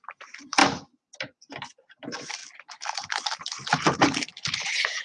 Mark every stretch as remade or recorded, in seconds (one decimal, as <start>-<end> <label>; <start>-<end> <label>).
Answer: 0.0-0.6 remade; 0.6-1.5 recorded; 1.5-2.4 remade; 2.4-3.7 recorded; 3.7-5.0 remade